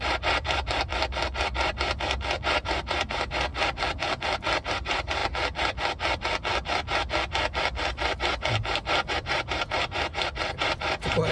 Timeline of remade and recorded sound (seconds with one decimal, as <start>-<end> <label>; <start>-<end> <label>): 0.0-0.9 remade; 0.9-1.4 recorded; 1.4-3.5 remade; 3.5-4.7 recorded; 4.7-5.2 remade; 5.2-9.1 recorded; 9.1-11.3 remade